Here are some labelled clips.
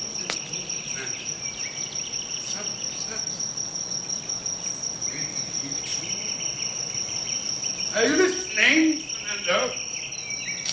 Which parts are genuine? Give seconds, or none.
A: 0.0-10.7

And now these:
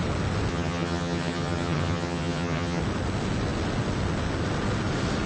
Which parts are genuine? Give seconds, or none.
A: 0.0-0.5; 2.8-5.3

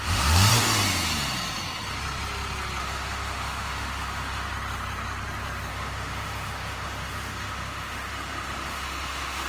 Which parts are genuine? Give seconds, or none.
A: 0.5-2.8; 4.5-5.7